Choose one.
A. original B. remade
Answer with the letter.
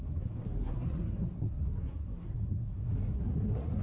B